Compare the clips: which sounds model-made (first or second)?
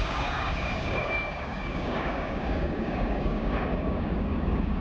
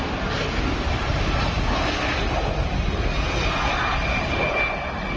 first